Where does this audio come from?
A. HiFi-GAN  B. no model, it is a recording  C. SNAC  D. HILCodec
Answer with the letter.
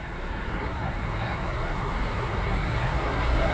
C